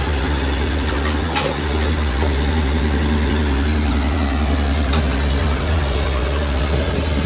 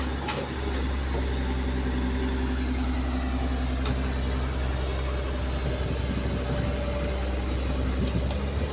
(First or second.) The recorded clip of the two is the second